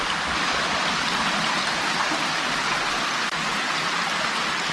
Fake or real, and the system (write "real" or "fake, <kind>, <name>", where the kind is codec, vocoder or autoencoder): real